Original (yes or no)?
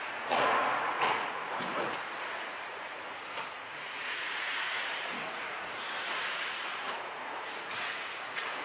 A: no